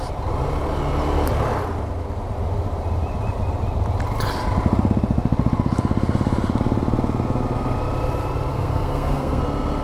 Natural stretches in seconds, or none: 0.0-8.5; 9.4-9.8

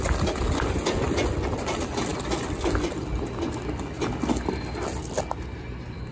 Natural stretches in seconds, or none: 0.0-6.1

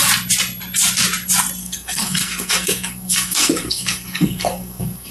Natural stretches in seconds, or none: 0.0-1.6

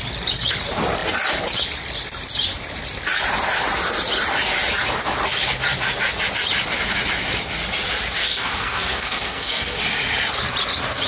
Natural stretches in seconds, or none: 0.0-8.2; 9.8-11.1